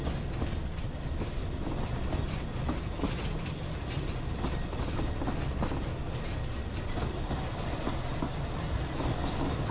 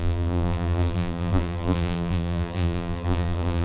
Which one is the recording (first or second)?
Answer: first